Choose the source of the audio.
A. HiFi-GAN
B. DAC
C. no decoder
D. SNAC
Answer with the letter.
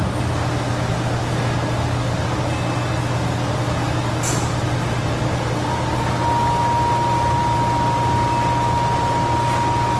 C